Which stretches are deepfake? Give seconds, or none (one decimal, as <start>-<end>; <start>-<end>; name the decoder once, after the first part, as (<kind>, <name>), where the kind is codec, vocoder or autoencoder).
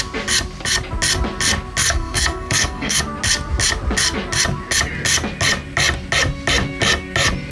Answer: 1.8-3.0 (codec, SNAC)